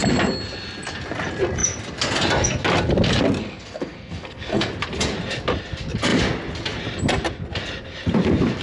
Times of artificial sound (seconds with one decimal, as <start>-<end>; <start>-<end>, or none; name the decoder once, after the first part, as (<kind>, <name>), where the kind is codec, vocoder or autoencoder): 3.4-4.7 (codec, SNAC)